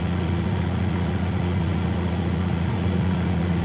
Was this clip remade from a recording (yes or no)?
yes